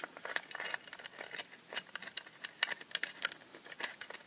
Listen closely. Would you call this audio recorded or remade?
recorded